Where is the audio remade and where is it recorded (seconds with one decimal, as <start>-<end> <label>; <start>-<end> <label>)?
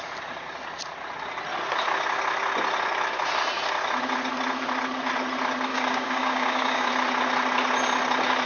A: 0.0-5.7 recorded; 5.7-6.9 remade; 6.9-8.5 recorded